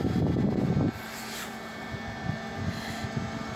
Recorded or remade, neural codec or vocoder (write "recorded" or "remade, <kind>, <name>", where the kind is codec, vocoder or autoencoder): recorded